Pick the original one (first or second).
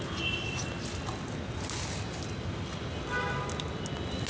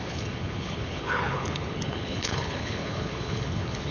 first